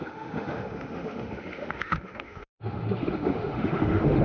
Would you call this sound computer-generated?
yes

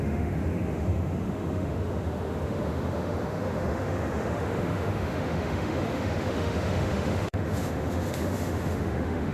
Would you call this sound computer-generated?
yes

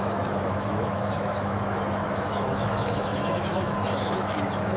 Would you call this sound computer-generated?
yes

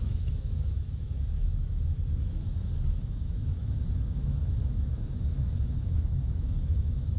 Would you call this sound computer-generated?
yes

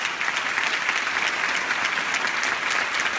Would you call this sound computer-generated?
no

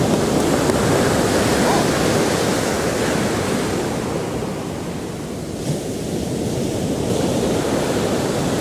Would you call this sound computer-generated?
no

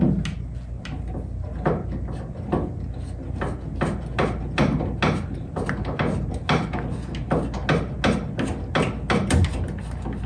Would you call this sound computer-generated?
no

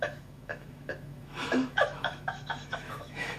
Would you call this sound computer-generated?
yes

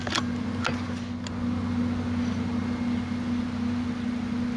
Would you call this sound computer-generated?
no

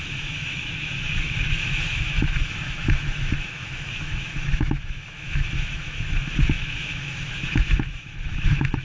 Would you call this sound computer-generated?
yes